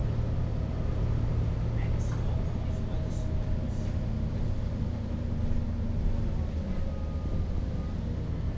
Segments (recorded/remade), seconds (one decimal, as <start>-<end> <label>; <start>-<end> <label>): 0.0-8.6 recorded